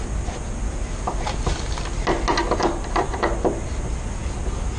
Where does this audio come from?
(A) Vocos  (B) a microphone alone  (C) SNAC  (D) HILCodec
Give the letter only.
B